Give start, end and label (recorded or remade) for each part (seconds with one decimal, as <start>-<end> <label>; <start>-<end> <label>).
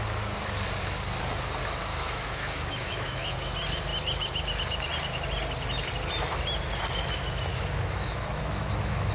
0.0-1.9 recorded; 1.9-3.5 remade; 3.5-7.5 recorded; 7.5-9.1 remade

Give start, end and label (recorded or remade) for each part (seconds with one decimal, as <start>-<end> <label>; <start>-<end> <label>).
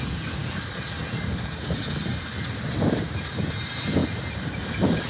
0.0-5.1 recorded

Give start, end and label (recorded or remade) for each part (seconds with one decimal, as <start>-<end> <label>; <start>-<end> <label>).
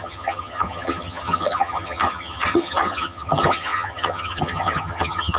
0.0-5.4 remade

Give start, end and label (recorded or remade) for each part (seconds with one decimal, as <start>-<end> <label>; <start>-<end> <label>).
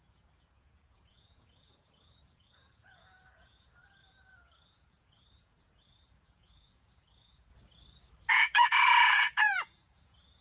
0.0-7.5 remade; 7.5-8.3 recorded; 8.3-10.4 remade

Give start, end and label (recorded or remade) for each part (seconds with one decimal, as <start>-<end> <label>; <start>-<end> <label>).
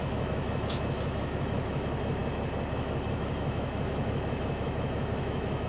0.0-2.2 remade; 2.2-2.8 recorded; 2.8-5.7 remade